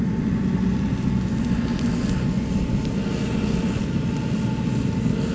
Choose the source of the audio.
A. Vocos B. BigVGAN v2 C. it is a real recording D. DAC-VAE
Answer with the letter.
C